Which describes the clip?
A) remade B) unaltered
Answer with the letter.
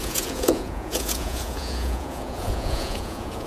A